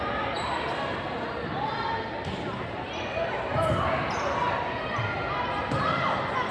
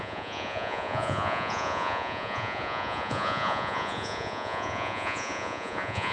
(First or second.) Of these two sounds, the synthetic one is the second